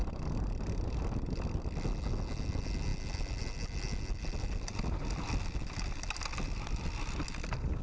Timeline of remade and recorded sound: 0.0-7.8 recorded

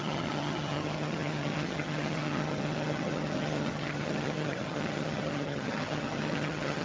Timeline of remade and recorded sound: 0.0-6.8 remade

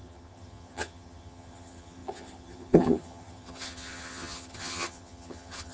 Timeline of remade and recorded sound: 0.0-5.7 remade